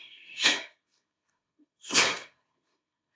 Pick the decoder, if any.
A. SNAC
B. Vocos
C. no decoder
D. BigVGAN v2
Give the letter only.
A